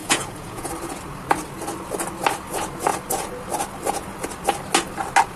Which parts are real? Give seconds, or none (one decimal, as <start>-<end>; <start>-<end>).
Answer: 0.7-5.4